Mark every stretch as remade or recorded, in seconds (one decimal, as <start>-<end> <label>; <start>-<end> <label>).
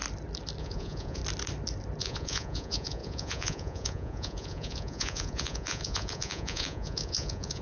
0.0-0.6 recorded; 0.6-1.2 remade; 1.2-2.0 recorded; 2.0-7.6 remade